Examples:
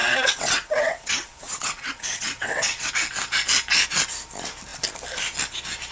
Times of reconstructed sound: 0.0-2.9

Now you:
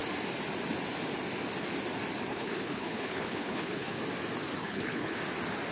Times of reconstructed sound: 2.3-4.0; 4.6-5.2

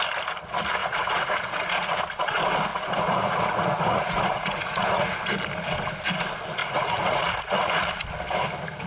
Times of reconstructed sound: 0.8-2.0; 2.7-5.2; 6.6-7.7

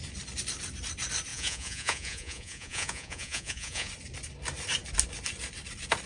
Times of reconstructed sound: 1.3-3.9

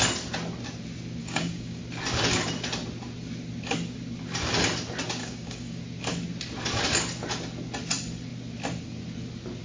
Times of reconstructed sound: 1.2-1.8; 5.2-5.8

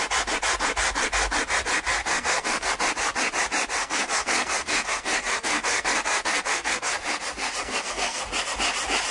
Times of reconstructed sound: 2.0-2.7; 3.8-6.9; 7.6-8.2

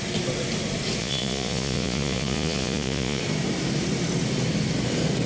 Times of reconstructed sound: 1.0-3.2

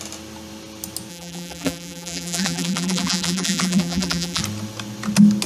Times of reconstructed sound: 1.1-4.4